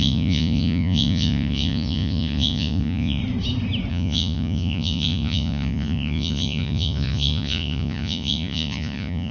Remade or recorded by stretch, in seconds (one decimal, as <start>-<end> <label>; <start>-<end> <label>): 0.0-3.2 remade; 3.2-3.9 recorded; 3.9-9.3 remade